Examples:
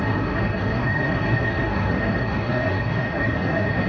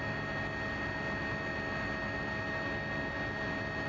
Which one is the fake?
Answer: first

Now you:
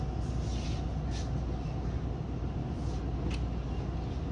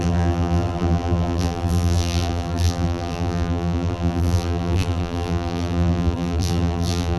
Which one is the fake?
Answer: second